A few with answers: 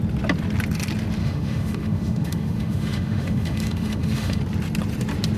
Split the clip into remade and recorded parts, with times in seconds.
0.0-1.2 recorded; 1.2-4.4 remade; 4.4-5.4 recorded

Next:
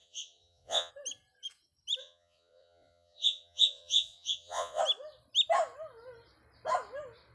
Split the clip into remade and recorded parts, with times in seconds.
0.0-0.9 remade; 0.9-2.0 recorded; 2.0-4.8 remade; 4.8-7.3 recorded